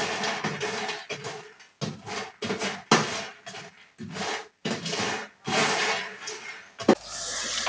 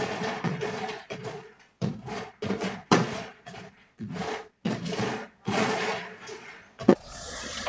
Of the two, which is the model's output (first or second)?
second